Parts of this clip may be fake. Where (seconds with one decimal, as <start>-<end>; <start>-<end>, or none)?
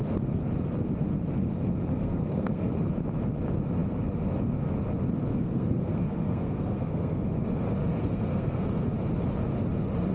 1.9-2.7; 5.3-7.2; 7.9-8.6